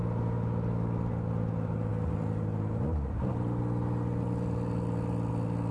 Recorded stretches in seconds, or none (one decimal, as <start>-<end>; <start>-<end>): 0.0-5.7